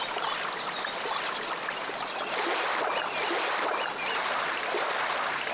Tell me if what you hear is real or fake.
real